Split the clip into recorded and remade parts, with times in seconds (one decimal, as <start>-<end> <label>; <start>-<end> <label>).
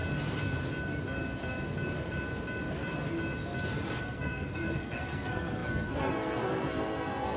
0.0-4.0 recorded; 4.0-7.4 remade